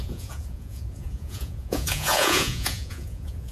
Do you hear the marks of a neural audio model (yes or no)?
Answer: yes